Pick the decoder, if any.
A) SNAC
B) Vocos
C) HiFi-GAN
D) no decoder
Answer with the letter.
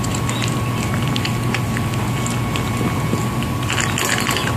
D